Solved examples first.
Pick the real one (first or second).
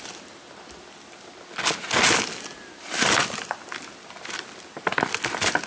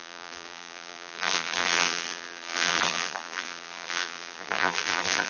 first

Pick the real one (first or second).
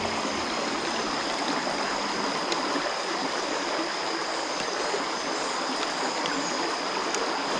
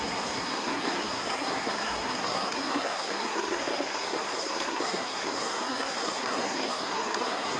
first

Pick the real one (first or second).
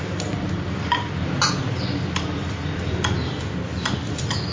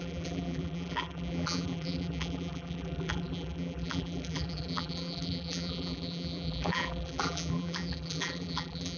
first